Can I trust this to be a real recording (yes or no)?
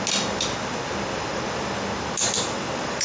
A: yes